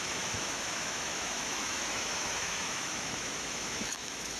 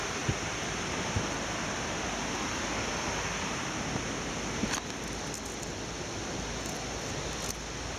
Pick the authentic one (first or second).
second